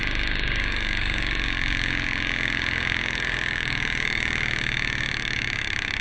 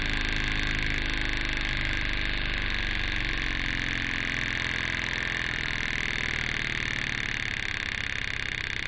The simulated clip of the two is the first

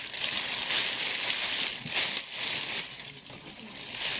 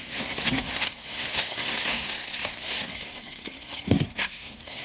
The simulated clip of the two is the second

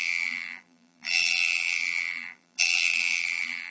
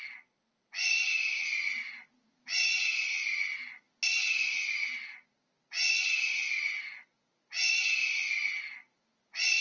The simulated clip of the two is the first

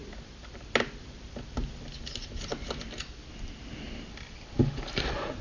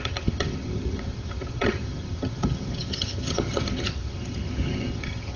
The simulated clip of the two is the second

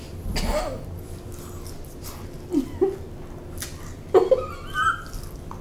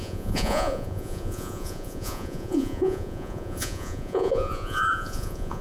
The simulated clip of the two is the second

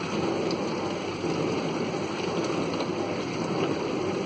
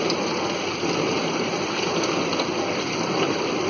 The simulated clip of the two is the second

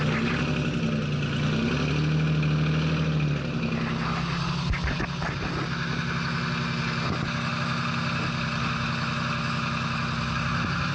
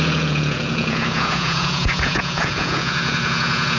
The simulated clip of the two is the second